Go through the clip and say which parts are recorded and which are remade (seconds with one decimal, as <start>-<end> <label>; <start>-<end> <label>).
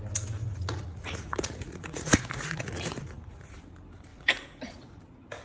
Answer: 0.0-0.4 recorded; 0.4-3.6 remade; 3.6-4.1 recorded; 4.1-5.0 remade; 5.0-5.4 recorded